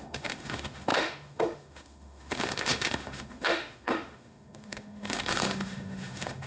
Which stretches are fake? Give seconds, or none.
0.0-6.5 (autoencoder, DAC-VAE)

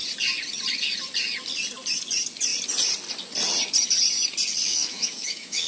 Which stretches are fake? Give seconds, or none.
4.7-5.7 (autoencoder, DAC-VAE)

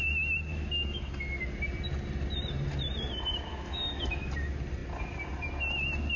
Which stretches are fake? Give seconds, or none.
0.5-1.1 (autoencoder, DAC-VAE); 3.5-4.3

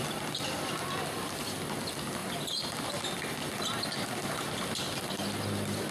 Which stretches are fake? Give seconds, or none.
none

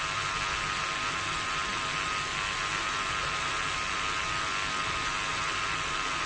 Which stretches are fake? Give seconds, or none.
none

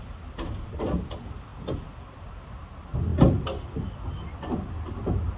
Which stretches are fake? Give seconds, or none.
none